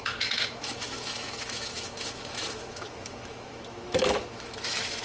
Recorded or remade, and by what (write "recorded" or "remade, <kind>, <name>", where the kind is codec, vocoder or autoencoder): remade, autoencoder, DAC-VAE